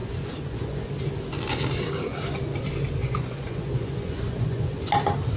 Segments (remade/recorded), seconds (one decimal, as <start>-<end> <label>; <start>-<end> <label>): 0.0-0.9 remade; 0.9-3.0 recorded; 3.0-4.8 remade; 4.8-5.4 recorded